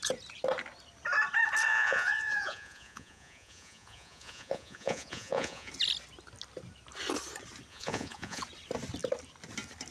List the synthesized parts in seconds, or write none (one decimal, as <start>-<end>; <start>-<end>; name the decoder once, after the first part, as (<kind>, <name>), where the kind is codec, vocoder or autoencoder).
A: 1.7-5.7 (vocoder, Vocos); 7.7-8.4

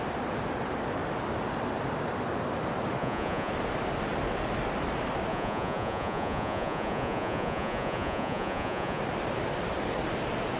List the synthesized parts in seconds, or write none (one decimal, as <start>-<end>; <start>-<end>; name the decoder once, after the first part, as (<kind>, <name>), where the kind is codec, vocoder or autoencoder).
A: 3.0-3.5 (vocoder, Vocos); 5.3-9.0

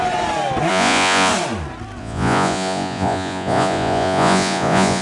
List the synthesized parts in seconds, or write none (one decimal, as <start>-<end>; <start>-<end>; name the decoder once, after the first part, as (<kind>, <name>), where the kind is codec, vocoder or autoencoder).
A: 0.7-1.3 (vocoder, Vocos); 2.0-5.0

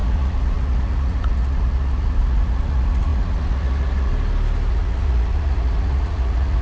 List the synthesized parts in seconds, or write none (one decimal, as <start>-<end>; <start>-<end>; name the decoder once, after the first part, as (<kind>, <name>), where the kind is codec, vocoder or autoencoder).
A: 0.0-4.1 (vocoder, Vocos); 4.7-6.6

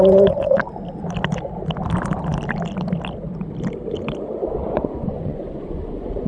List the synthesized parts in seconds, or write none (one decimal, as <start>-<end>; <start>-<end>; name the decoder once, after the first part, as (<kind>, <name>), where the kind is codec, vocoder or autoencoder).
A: 0.0-0.6 (vocoder, Vocos); 4.2-6.3